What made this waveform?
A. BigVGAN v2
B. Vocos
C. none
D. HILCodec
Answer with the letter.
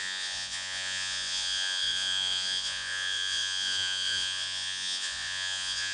B